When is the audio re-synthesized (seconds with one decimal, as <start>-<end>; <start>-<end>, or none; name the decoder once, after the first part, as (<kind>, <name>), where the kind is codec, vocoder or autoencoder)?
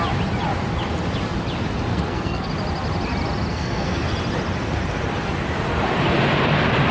1.9-2.5 (codec, SNAC); 3.5-4.1